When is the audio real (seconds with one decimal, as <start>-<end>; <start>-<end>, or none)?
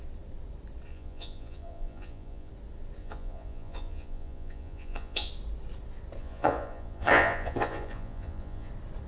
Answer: 0.0-0.9; 2.5-3.0; 5.3-6.2; 8.7-9.1